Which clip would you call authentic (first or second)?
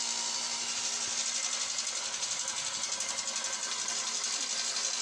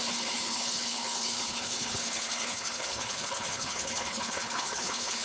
first